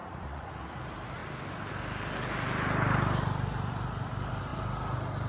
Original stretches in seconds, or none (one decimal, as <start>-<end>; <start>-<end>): 0.5-5.3